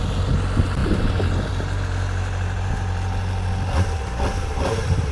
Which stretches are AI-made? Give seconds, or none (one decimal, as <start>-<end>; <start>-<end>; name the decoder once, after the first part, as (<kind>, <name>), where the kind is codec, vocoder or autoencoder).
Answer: none